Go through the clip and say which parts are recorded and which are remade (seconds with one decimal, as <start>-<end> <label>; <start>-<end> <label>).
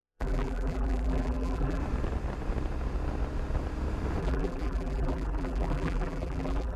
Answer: 0.0-1.8 remade; 1.8-4.2 recorded; 4.2-6.8 remade